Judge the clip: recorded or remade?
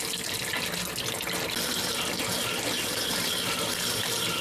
recorded